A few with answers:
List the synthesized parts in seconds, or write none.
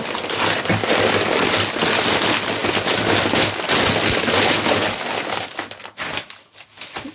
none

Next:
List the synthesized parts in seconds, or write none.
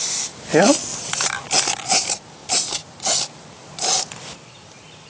none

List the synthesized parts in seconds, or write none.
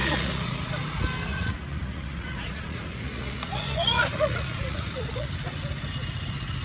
0.0-0.7 (vocoder, Vocos); 1.3-5.3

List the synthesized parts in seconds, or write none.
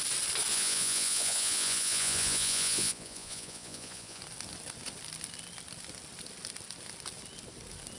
0.5-4.2 (vocoder, Vocos)